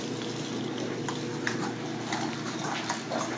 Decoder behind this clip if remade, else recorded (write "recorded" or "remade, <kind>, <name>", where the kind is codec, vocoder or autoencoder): recorded